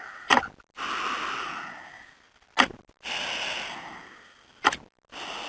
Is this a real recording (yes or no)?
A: yes